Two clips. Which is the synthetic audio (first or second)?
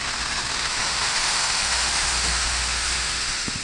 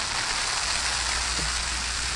first